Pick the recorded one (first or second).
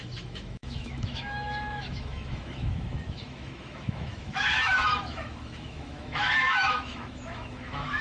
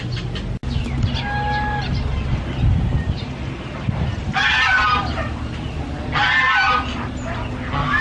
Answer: second